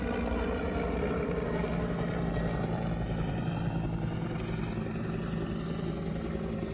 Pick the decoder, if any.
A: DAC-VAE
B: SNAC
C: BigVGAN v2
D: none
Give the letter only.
D